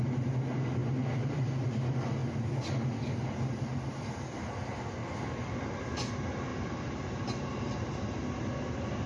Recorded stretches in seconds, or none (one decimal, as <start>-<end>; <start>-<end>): 0.0-6.5; 7.4-9.1